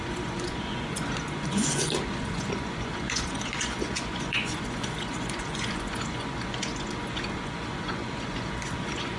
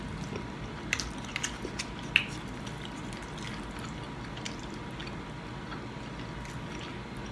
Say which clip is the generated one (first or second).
first